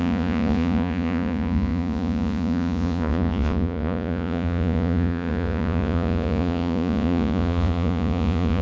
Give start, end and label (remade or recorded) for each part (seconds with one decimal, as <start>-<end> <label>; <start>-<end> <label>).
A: 0.0-8.6 remade